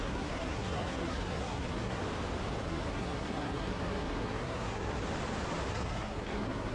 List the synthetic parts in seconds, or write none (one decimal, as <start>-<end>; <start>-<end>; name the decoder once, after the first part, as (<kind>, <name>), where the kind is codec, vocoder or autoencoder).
0.0-2.0 (codec, SNAC); 2.6-5.0; 5.7-6.7